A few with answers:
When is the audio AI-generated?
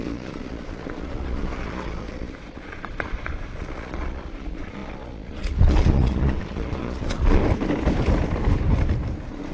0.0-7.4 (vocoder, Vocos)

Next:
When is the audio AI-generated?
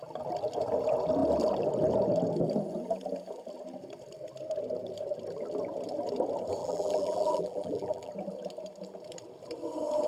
6.6-8.1 (vocoder, BigVGAN v2)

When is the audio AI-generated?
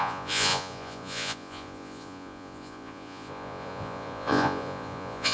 0.0-5.3 (vocoder, Vocos)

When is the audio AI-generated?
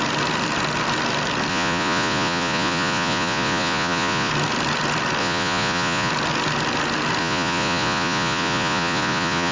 1.5-4.3 (vocoder, Vocos); 5.2-6.1; 7.2-9.5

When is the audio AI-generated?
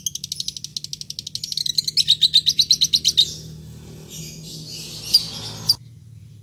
none